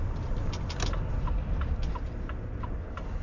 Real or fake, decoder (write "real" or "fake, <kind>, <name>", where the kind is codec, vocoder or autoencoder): real